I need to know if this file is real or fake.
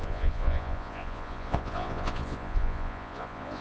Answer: fake